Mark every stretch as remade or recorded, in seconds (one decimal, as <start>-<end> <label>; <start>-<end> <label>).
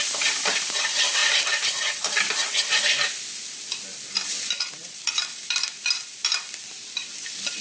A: 0.0-1.2 remade; 1.2-4.3 recorded; 4.3-7.6 remade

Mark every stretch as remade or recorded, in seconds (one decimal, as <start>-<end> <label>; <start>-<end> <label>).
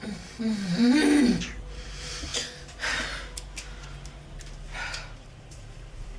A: 0.0-2.3 remade; 2.3-5.2 recorded; 5.2-6.2 remade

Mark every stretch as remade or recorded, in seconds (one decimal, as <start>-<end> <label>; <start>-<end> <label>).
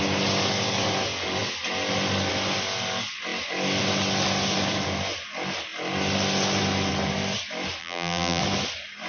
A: 0.0-7.8 recorded; 7.8-8.4 remade; 8.4-9.1 recorded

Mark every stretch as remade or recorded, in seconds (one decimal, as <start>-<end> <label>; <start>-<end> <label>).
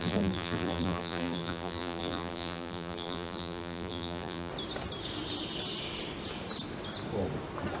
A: 0.0-4.5 remade; 4.5-7.8 recorded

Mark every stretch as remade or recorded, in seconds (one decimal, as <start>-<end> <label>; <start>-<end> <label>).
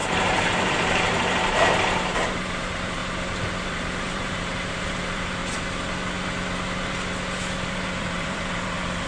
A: 0.0-3.0 remade; 3.0-3.6 recorded; 3.6-5.4 remade; 5.4-7.7 recorded; 7.7-9.1 remade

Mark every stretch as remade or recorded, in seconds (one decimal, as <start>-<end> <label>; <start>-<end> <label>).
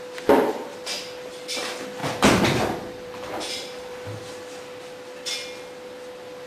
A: 0.0-2.0 recorded; 2.0-4.2 remade; 4.2-6.5 recorded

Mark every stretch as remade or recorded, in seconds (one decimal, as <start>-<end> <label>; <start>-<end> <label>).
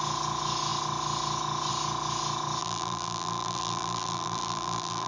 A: 0.0-2.6 recorded; 2.6-5.1 remade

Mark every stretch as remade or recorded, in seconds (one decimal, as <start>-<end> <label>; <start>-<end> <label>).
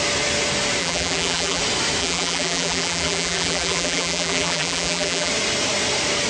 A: 0.0-0.8 recorded; 0.8-1.6 remade; 1.6-2.0 recorded; 2.0-5.3 remade; 5.3-6.3 recorded